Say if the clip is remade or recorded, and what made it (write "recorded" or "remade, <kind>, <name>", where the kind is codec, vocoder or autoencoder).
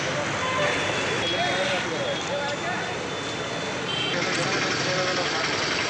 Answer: recorded